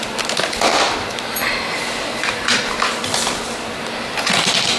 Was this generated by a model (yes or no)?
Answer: no